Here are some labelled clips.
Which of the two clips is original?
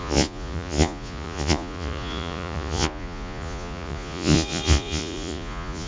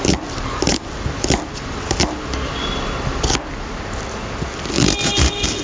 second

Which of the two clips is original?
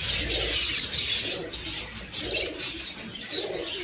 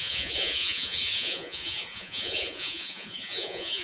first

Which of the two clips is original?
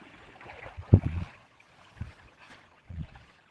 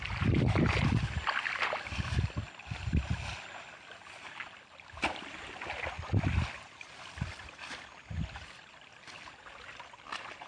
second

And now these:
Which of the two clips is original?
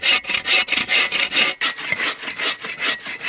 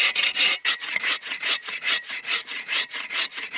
first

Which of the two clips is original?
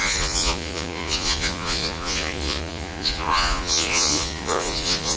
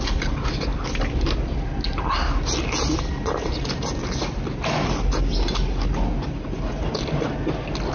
second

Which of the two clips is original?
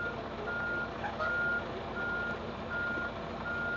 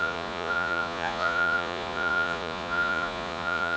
first